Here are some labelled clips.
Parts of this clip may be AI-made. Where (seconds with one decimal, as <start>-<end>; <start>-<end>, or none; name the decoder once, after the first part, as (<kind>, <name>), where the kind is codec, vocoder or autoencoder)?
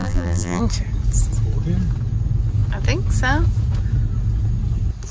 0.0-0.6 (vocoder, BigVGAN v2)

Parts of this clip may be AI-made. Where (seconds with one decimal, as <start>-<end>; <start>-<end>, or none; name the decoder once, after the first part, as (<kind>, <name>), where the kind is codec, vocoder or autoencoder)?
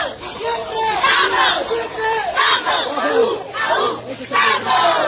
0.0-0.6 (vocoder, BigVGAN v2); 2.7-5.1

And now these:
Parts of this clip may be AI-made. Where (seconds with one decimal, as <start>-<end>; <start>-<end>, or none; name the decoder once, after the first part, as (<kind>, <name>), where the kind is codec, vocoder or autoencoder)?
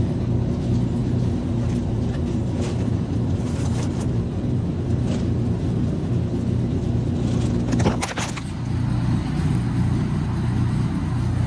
1.0-6.2 (vocoder, BigVGAN v2)